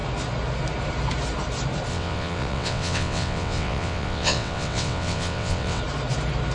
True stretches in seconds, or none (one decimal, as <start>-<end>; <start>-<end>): 0.0-1.9; 5.8-6.5